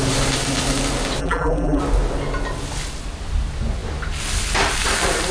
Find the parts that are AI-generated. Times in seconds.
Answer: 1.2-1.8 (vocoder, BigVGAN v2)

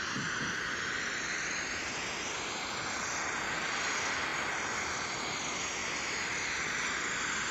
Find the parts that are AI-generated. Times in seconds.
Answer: 4.3-5.2 (vocoder, BigVGAN v2); 5.8-6.8

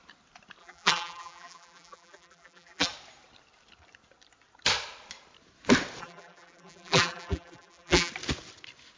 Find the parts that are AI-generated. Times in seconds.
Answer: 0.6-2.9 (vocoder, BigVGAN v2); 6.0-8.1

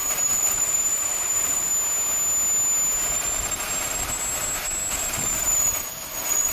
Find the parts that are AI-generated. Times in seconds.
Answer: 0.0-1.7 (vocoder, BigVGAN v2); 4.9-6.5

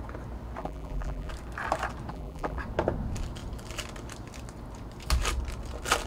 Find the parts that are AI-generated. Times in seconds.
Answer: 0.6-1.3 (vocoder, BigVGAN v2); 2.1-2.6

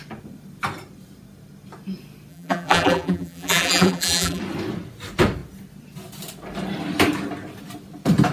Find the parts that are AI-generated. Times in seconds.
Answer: 2.3-4.4 (vocoder, BigVGAN v2)

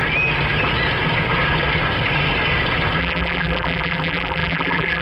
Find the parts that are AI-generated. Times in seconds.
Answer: 3.0-5.0 (vocoder, BigVGAN v2)